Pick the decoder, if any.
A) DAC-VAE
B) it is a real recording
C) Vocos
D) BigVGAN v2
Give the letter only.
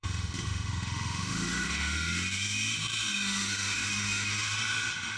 A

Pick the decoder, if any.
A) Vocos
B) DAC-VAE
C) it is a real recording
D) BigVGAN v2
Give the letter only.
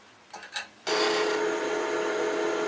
C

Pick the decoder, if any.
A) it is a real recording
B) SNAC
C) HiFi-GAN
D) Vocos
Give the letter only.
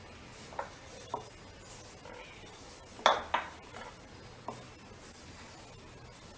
A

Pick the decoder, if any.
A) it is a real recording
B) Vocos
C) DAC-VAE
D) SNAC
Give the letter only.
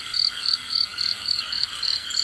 D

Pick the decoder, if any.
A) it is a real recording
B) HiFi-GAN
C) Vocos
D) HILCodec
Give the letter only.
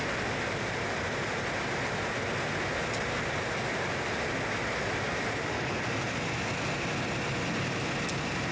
A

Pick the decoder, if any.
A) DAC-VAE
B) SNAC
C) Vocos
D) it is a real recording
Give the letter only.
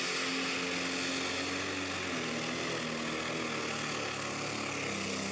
D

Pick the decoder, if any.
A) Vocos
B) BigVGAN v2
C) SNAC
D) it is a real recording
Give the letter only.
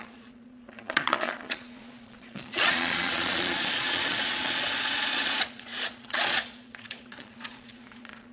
A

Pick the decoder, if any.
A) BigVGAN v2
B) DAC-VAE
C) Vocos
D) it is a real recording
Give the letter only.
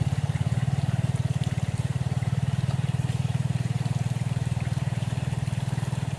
A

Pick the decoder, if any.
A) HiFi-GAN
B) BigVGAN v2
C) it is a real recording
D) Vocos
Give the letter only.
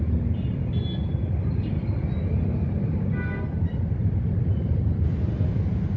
C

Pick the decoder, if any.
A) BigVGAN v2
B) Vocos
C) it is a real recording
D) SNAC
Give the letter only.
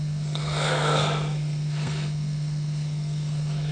D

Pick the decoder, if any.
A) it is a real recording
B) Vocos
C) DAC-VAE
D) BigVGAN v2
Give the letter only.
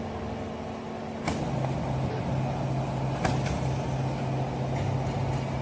A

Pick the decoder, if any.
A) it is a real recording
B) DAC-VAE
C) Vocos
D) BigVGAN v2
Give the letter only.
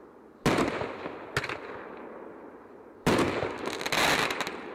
A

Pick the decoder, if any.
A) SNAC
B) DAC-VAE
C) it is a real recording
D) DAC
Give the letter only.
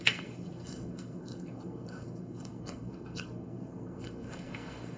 A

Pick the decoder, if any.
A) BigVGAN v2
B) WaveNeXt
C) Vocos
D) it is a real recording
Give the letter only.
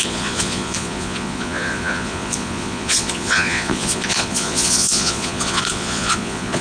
C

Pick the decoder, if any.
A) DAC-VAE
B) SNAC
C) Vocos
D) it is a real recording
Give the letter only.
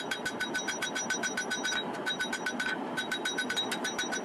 D